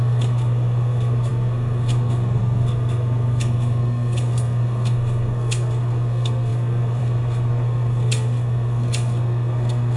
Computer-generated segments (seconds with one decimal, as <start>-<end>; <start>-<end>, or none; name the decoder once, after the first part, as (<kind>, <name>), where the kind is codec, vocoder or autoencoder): 0.0-10.0 (codec, SNAC)